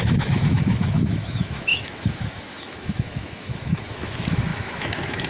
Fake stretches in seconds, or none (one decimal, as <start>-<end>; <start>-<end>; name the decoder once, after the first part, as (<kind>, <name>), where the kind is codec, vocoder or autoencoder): 0.0-5.3 (autoencoder, DAC-VAE)